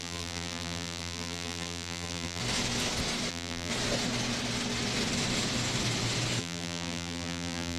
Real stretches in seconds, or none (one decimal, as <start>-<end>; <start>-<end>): 2.4-3.3; 3.7-6.4